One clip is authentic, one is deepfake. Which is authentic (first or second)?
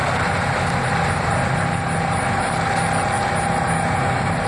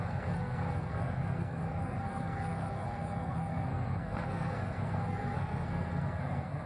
first